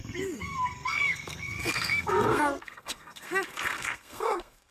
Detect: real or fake fake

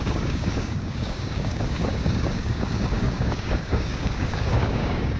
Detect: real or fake fake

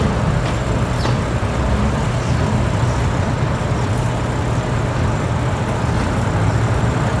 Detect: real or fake real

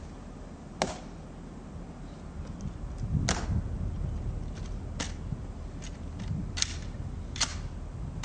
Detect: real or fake real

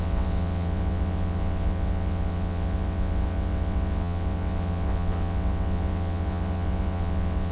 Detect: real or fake fake